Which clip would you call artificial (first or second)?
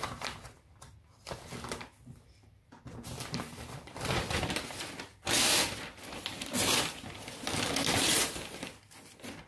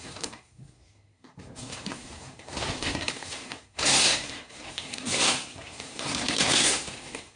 second